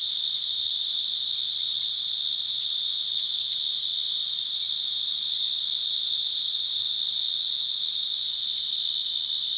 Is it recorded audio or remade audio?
recorded